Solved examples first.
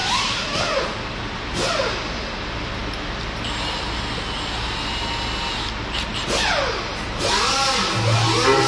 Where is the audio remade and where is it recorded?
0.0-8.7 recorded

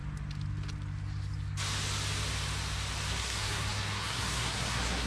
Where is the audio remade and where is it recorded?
0.0-3.1 recorded; 3.1-5.1 remade

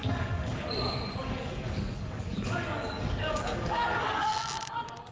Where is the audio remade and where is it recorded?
0.0-0.6 remade; 0.6-1.2 recorded; 1.2-4.3 remade; 4.3-5.1 recorded

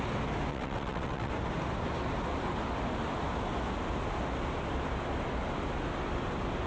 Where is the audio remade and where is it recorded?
0.0-0.5 recorded; 0.5-1.3 remade; 1.3-6.7 recorded

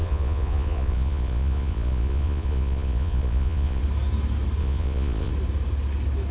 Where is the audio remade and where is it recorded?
0.0-3.8 remade; 3.8-4.6 recorded; 4.6-5.3 remade; 5.3-6.3 recorded

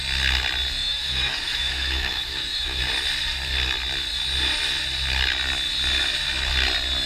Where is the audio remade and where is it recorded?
0.0-0.8 recorded; 0.8-2.8 remade; 2.8-7.1 recorded

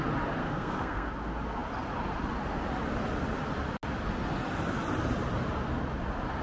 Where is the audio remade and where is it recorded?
0.0-0.4 recorded; 0.4-1.1 remade; 1.1-6.4 recorded

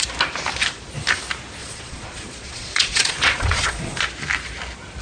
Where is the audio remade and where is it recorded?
0.0-1.6 recorded; 1.6-4.0 remade; 4.0-5.0 recorded